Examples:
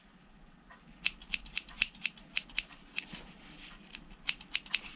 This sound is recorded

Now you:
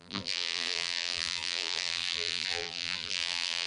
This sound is remade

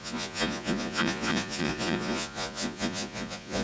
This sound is remade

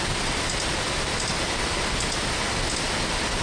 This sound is recorded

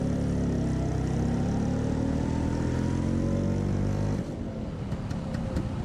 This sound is recorded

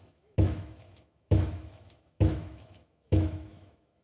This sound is remade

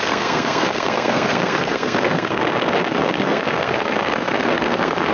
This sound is remade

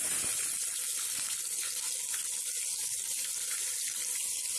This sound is recorded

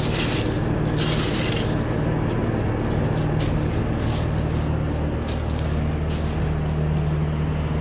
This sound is recorded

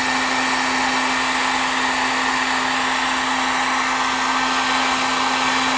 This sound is recorded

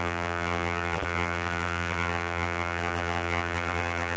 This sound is remade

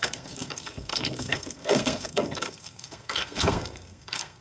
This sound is remade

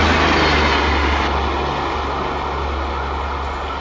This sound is recorded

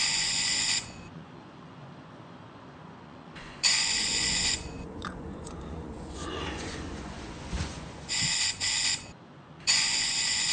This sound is remade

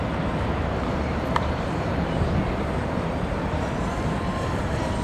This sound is remade